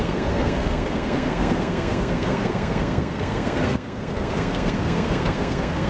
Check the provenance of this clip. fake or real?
fake